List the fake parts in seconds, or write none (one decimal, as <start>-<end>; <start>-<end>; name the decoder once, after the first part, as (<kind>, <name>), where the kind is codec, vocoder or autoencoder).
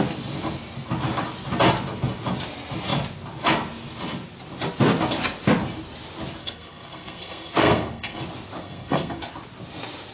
6.4-8.2 (codec, SNAC); 8.6-9.2